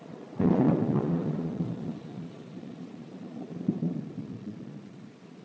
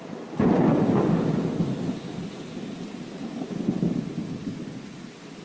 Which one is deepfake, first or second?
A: first